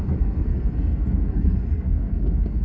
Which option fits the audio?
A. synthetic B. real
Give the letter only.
A